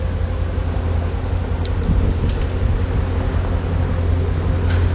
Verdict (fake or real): real